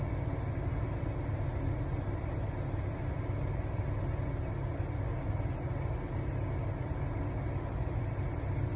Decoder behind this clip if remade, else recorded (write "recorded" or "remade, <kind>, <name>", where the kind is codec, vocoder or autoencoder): recorded